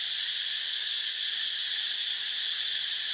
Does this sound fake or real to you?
real